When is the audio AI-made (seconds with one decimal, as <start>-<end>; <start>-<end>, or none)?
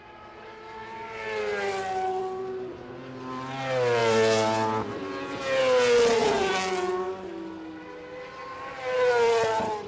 6.2-6.9